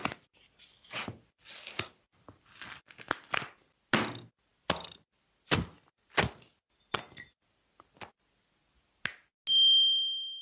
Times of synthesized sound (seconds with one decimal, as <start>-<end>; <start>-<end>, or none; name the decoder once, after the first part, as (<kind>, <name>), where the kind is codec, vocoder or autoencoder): none